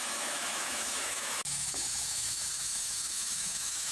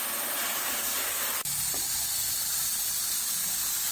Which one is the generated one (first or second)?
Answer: first